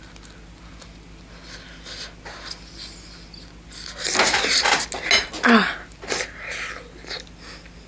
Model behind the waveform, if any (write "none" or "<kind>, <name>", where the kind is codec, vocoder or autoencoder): none